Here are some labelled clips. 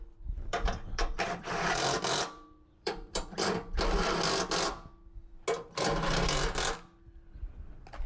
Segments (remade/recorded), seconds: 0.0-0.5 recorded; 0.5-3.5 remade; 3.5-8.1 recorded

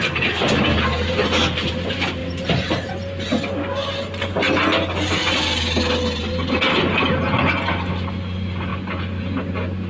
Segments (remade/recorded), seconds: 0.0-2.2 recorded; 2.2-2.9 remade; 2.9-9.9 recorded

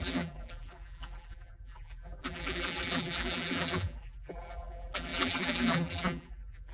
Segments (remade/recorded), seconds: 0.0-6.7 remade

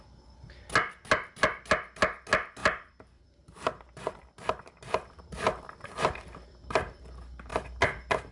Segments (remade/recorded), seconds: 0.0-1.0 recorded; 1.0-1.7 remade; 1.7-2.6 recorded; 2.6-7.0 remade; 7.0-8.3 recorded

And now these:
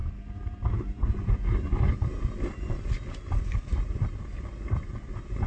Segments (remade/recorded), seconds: 0.0-5.5 remade

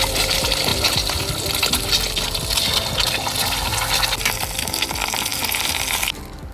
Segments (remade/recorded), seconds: 0.0-6.5 recorded